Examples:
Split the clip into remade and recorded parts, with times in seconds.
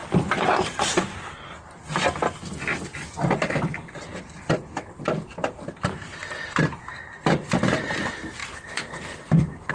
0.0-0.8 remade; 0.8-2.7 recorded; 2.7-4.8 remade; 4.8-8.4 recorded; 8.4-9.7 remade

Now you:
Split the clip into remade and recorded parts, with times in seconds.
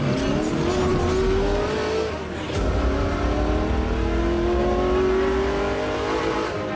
0.0-6.8 recorded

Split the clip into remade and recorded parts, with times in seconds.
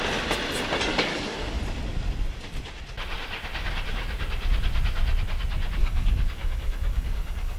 0.0-0.9 recorded; 0.9-1.6 remade; 1.6-5.8 recorded; 5.8-7.6 remade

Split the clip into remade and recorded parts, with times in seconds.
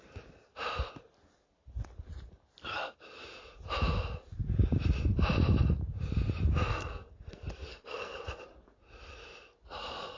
0.0-6.7 recorded; 6.7-8.2 remade; 8.2-10.2 recorded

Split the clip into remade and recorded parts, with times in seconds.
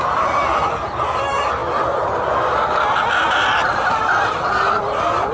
0.0-5.3 recorded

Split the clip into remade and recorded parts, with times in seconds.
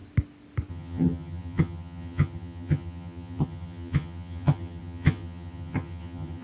0.0-0.7 recorded; 0.7-6.4 remade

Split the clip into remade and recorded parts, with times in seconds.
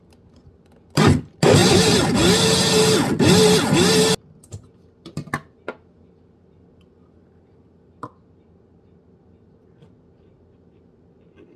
0.0-1.6 recorded; 1.6-2.2 remade; 2.2-11.6 recorded